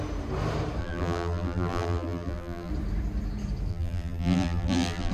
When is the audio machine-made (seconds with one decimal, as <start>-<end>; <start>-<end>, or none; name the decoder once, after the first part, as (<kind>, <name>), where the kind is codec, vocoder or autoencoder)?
0.8-2.7 (vocoder, BigVGAN v2); 3.7-5.1